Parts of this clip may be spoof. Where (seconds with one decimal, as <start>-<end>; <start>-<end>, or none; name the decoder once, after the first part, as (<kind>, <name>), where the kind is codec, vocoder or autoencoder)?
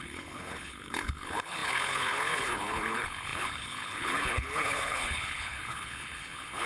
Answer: 0.0-6.7 (codec, HILCodec)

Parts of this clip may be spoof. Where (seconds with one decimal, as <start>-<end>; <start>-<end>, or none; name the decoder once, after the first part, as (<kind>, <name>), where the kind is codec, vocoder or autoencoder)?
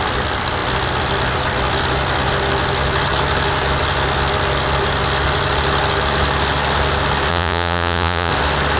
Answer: 7.3-8.3 (vocoder, Vocos)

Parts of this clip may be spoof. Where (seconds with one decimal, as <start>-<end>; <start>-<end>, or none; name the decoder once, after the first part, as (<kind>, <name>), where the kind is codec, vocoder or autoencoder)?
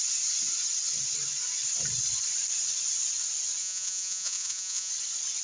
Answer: 3.6-4.9 (vocoder, Vocos)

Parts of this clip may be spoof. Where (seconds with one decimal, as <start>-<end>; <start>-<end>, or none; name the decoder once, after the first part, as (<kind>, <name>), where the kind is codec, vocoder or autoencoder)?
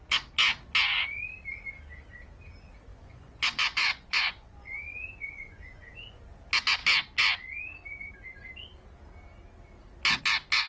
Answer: 2.9-6.2 (vocoder, Vocos)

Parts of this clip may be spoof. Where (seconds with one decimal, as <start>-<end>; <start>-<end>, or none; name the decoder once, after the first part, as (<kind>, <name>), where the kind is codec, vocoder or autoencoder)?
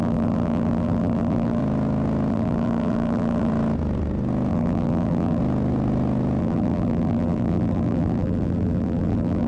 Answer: 0.0-1.6 (vocoder, BigVGAN v2); 2.3-3.5; 4.5-5.4; 6.4-9.5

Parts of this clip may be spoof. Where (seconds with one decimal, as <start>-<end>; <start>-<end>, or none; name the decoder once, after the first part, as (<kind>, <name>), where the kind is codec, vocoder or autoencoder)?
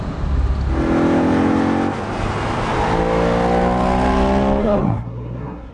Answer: 4.6-5.7 (codec, SNAC)